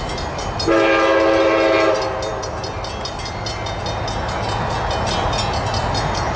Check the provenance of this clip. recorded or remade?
recorded